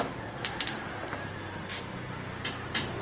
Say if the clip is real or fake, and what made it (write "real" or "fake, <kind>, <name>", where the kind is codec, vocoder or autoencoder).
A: real